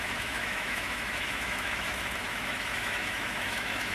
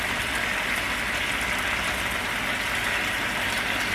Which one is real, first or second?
second